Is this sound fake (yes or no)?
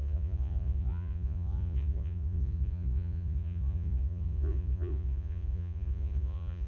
yes